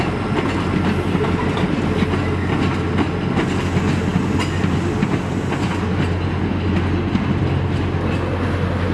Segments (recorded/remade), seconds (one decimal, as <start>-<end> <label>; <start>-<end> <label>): 0.0-8.9 recorded